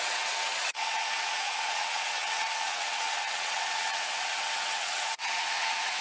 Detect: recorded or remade remade